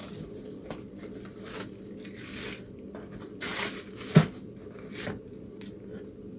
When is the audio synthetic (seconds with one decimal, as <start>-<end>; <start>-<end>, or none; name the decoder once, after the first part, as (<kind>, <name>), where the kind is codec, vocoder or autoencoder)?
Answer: none